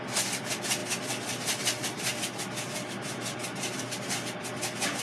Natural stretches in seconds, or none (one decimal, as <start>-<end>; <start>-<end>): 0.0-5.0